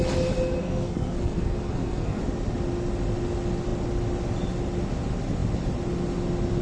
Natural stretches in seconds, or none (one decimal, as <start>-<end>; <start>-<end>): 0.0-0.6; 2.2-6.6